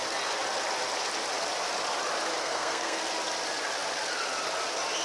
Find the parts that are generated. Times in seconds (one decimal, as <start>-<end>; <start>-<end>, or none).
2.4-3.0